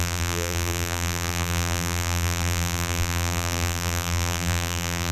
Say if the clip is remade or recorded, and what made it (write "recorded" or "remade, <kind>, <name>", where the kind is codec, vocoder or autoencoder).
remade, vocoder, BigVGAN v2